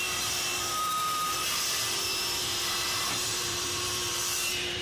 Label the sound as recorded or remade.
remade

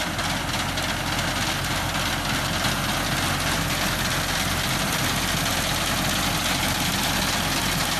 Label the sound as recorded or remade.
recorded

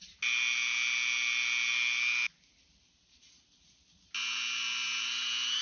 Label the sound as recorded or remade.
recorded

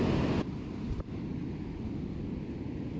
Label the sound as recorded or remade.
recorded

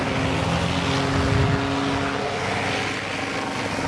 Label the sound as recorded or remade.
recorded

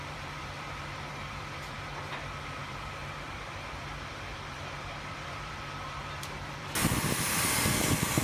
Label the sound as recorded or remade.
remade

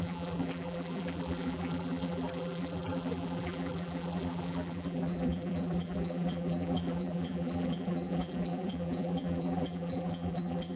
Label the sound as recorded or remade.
remade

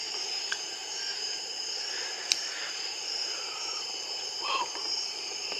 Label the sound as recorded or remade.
remade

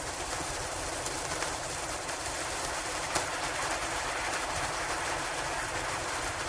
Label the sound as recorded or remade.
recorded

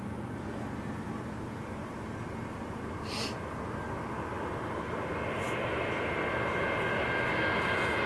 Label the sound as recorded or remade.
recorded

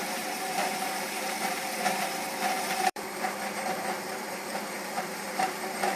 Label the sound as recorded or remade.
remade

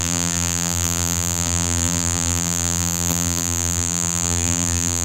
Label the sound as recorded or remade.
remade